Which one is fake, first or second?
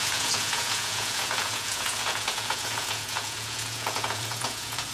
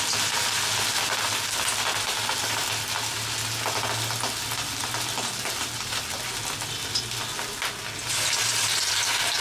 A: first